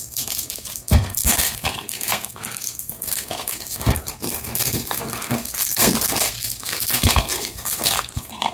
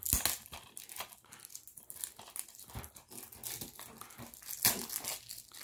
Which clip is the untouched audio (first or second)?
second